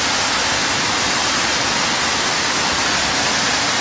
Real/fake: real